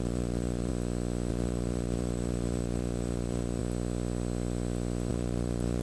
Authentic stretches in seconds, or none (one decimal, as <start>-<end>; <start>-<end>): 0.7-1.3; 3.6-5.1